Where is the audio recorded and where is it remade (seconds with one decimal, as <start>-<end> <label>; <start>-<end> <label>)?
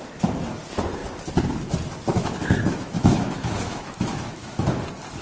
0.0-2.2 recorded; 2.2-4.8 remade; 4.8-5.2 recorded